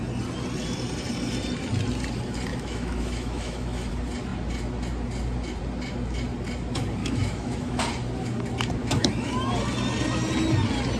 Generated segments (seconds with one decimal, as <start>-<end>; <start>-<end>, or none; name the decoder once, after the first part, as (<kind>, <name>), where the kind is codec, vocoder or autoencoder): 2.5-3.9 (autoencoder, DAC-VAE); 7.0-7.8; 8.8-9.5